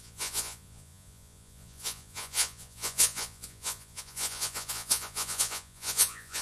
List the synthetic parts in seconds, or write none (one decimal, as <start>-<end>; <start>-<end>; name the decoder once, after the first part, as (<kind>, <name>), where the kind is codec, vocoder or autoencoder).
0.0-6.4 (vocoder, Vocos)